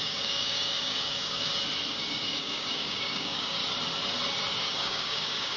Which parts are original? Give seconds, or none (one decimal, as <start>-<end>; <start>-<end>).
1.5-2.1; 3.6-4.6